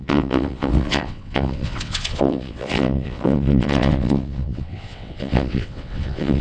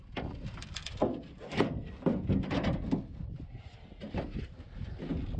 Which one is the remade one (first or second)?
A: first